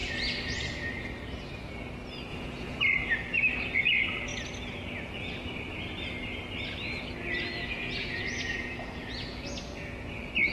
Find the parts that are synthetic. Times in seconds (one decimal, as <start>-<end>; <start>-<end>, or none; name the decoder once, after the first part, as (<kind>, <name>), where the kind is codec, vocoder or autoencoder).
2.3-2.8 (vocoder, Vocos); 7.6-9.5